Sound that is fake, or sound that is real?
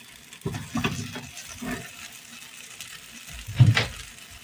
real